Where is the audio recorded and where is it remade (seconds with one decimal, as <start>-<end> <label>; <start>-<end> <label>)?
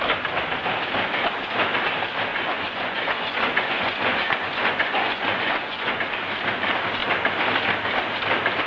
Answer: 0.0-2.3 recorded; 2.3-6.0 remade; 6.0-8.7 recorded